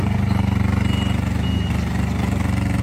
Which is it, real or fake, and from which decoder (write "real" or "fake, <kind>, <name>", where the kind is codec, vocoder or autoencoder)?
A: real